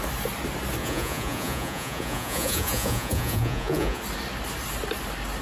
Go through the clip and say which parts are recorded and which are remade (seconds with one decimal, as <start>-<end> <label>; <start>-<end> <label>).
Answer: 0.0-0.8 recorded; 0.8-4.0 remade; 4.0-5.4 recorded